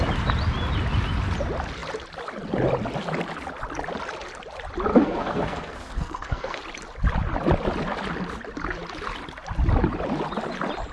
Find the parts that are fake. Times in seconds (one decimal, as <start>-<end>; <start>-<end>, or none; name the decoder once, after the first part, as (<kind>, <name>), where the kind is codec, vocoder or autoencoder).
4.9-6.6 (codec, SNAC)